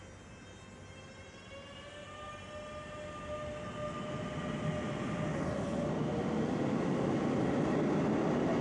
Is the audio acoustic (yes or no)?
yes